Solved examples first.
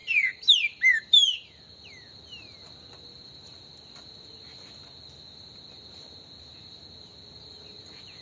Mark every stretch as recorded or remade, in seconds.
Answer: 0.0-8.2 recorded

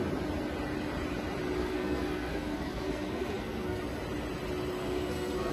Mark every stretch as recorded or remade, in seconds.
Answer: 0.0-1.6 recorded; 1.6-3.8 remade; 3.8-4.8 recorded; 4.8-5.5 remade

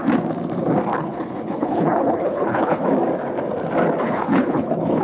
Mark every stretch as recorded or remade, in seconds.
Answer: 0.0-1.0 recorded; 1.0-2.8 remade; 2.8-4.0 recorded; 4.0-5.0 remade

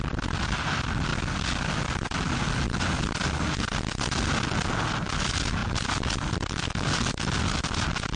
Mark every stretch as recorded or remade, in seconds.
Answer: 0.0-8.2 recorded

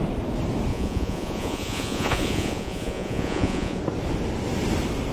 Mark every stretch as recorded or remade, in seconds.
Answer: 0.0-0.7 recorded; 0.7-3.8 remade; 3.8-5.1 recorded